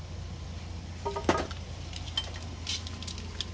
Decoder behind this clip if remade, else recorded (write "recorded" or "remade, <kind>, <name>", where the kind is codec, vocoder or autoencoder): recorded